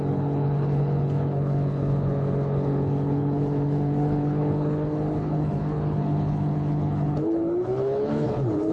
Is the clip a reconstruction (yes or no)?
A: yes